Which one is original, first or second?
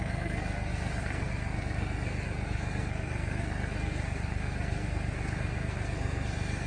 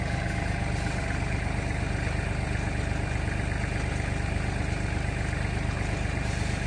second